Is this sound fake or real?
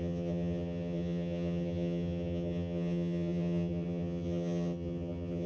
fake